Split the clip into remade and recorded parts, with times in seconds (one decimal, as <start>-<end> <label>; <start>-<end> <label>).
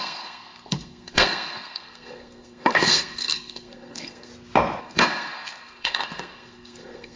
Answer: 0.0-4.3 remade; 4.3-4.8 recorded; 4.8-7.2 remade